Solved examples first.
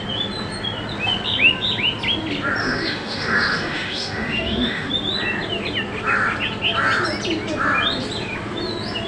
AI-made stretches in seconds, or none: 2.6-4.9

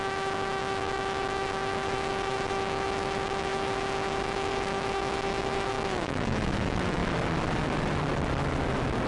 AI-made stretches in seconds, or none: 0.0-7.0